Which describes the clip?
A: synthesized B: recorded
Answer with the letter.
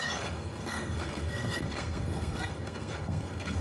A